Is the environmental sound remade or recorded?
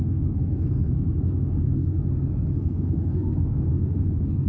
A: remade